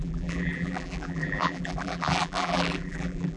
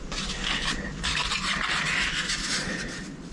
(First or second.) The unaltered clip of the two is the second